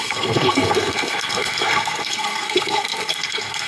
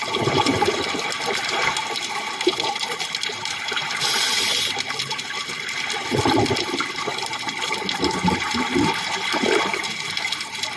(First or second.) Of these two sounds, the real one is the second